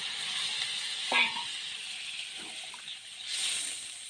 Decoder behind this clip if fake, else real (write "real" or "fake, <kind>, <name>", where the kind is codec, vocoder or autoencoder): real